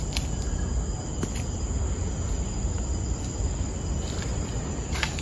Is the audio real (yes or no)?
yes